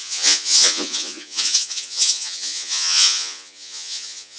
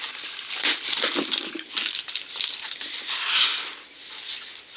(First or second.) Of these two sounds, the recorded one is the second